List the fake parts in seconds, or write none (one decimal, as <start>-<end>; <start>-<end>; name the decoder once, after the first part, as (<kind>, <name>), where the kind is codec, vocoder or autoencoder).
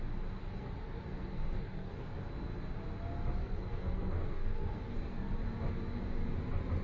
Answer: 0.4-1.9 (codec, SNAC); 3.4-5.3